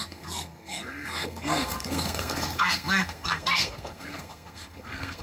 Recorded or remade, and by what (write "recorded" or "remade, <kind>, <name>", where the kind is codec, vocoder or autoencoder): remade, codec, SNAC